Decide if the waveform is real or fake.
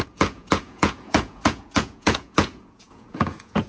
fake